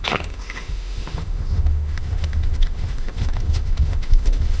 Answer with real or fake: fake